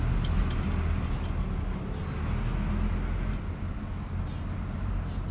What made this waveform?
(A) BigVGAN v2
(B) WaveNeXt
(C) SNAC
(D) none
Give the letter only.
D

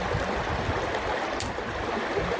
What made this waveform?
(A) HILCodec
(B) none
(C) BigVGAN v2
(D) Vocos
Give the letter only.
B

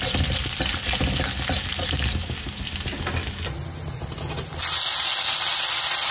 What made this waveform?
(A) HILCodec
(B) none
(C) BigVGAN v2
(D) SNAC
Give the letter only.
B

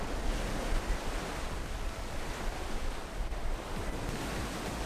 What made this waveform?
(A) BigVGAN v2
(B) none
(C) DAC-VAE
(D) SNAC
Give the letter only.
B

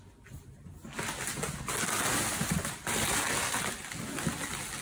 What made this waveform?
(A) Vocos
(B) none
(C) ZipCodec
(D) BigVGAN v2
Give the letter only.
B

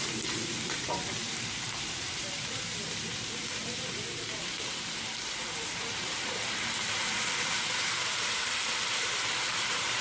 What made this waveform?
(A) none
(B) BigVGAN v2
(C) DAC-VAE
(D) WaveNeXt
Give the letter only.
B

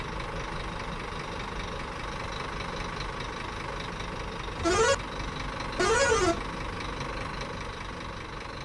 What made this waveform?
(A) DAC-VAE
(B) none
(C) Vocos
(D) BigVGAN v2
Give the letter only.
B